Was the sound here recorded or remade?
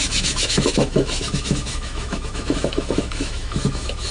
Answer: remade